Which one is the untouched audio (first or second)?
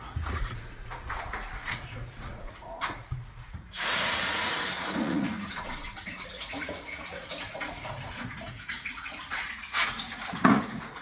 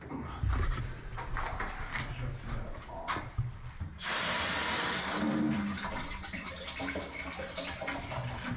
second